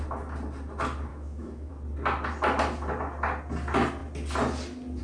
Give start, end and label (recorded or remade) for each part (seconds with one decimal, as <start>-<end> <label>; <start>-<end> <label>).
0.0-1.1 recorded; 1.1-1.7 remade; 1.7-5.0 recorded